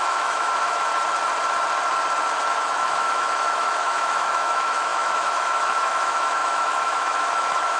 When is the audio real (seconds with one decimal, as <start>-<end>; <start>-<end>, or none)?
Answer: 0.9-2.5